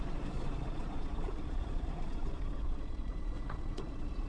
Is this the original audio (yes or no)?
no